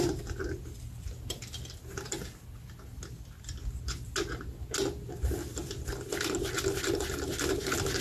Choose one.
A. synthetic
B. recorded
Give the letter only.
B